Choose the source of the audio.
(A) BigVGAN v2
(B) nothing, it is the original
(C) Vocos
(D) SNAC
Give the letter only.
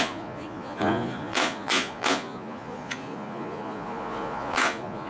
C